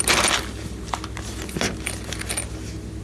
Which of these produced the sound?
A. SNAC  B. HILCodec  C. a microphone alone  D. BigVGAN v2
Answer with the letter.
C